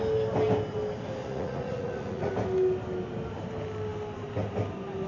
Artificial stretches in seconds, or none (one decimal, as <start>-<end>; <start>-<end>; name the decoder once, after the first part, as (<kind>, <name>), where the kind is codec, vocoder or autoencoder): 1.2-2.3 (vocoder, Vocos)